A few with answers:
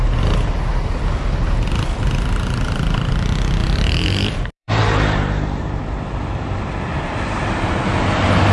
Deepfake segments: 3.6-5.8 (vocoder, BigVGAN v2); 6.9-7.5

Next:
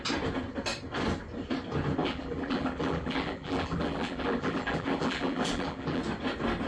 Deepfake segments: 2.0-6.0 (vocoder, BigVGAN v2)

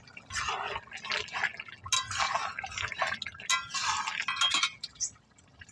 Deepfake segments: none

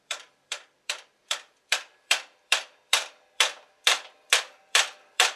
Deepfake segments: 0.0-5.4 (vocoder, BigVGAN v2)

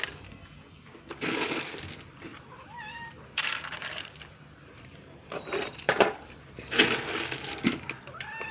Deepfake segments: 2.3-6.7 (vocoder, BigVGAN v2)

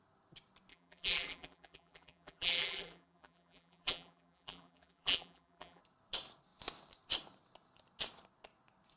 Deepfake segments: 0.7-5.8 (vocoder, BigVGAN v2)

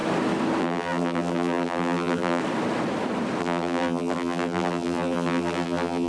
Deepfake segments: 0.6-2.4 (vocoder, BigVGAN v2); 3.4-6.1

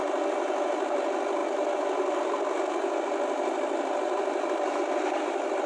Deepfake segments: none